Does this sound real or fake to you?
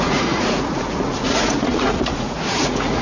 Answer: fake